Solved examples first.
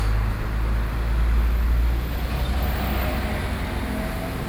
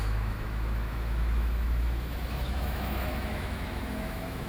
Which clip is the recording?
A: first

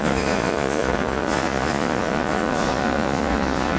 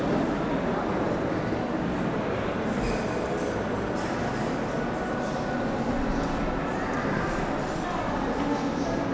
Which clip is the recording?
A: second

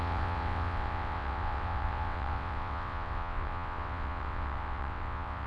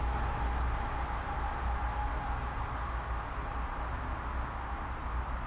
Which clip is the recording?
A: second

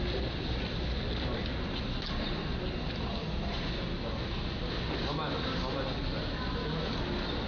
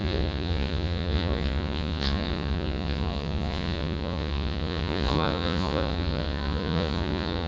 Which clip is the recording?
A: first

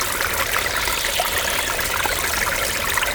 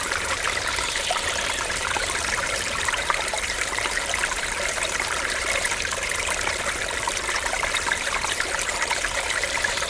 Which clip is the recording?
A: first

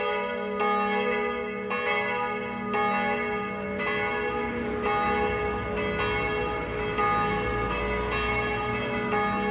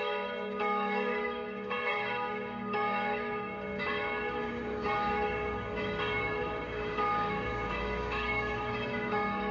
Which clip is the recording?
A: first